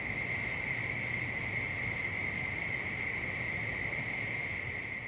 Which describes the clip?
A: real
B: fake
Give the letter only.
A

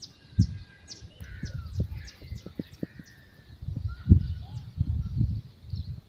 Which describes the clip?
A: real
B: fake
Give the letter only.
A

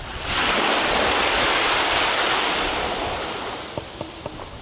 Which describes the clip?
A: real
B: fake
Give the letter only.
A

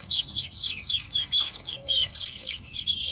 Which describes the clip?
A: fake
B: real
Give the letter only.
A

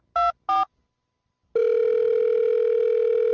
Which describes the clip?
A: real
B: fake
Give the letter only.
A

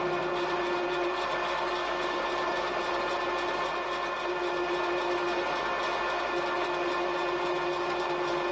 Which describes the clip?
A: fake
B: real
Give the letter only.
B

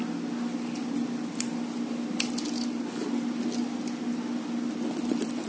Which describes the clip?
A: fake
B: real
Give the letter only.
B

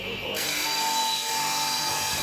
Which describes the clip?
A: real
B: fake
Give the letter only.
B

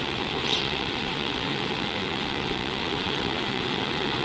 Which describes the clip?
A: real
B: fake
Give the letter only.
B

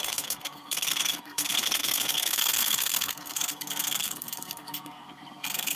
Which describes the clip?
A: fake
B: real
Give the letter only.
A